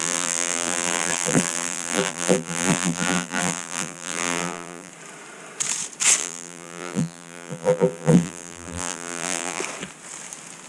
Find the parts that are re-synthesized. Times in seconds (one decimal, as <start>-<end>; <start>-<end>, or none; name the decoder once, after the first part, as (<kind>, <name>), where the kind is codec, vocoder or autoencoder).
0.0-4.9 (vocoder, BigVGAN v2); 6.2-9.6